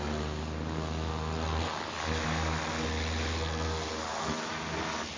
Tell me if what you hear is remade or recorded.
recorded